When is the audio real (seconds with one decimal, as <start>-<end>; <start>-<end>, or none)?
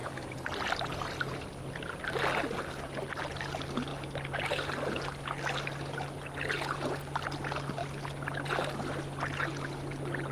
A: 0.9-10.3